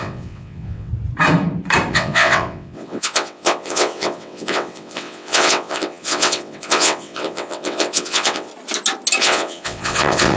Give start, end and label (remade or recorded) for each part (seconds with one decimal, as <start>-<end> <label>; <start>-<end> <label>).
0.0-0.9 remade; 0.9-1.9 recorded; 1.9-8.5 remade; 8.5-9.2 recorded; 9.2-10.4 remade